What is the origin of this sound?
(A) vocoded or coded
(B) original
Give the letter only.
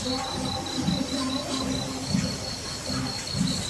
B